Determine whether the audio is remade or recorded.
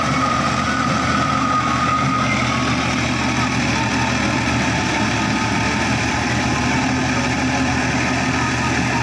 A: recorded